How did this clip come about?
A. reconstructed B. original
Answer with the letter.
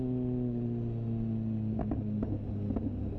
B